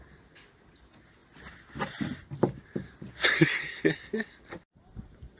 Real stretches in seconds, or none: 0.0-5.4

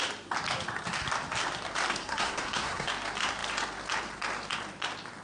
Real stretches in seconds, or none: 0.0-2.0; 2.9-5.2

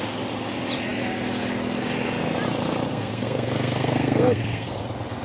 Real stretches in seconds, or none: 0.0-2.9; 4.8-5.2

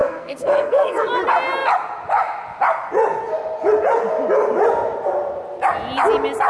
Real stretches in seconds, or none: 1.1-6.5

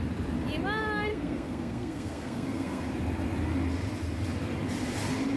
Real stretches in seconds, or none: 0.0-1.1; 2.8-5.4

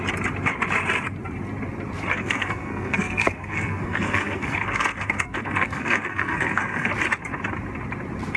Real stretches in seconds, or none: 0.0-2.1; 6.9-8.4